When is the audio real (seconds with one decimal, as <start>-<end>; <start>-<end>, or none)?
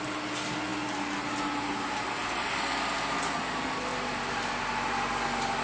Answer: 0.0-5.6